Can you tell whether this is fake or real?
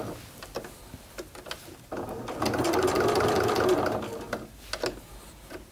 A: real